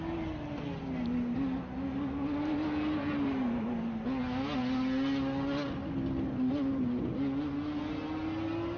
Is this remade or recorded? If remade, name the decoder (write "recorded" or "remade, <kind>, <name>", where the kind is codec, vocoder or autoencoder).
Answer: recorded